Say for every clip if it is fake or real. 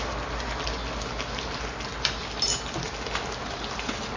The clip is real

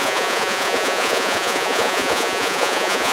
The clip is fake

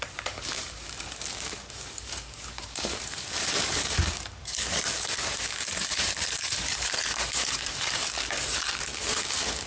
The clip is fake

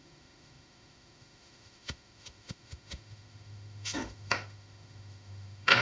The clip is fake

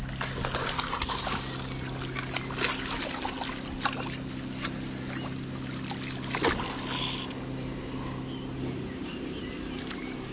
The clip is real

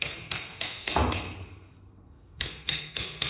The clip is fake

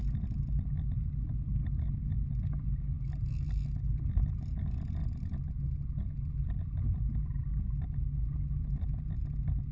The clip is real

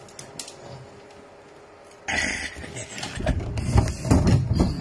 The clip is real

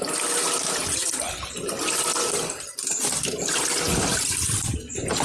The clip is real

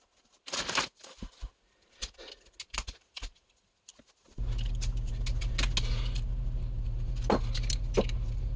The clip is real